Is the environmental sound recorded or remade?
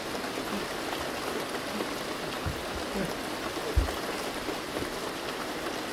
recorded